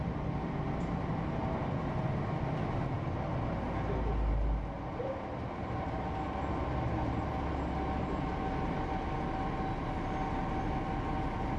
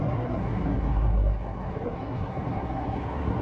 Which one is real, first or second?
first